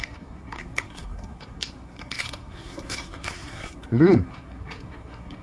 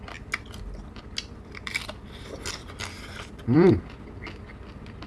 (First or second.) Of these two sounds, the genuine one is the second